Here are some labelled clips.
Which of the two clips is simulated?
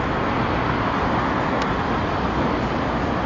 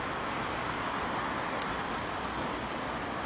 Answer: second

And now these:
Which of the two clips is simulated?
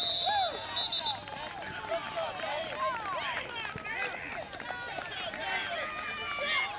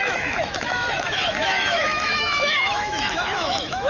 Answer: second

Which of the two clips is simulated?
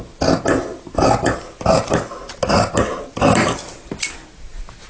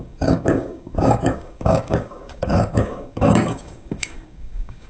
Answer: second